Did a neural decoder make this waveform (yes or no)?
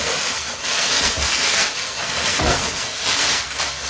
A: yes